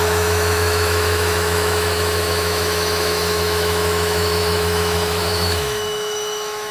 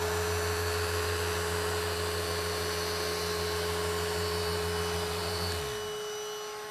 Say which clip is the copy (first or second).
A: first